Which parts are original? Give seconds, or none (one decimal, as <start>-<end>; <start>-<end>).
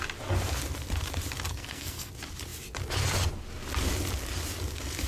0.0-1.5; 2.1-5.1